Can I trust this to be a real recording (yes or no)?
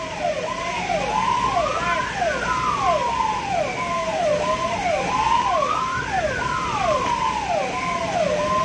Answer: yes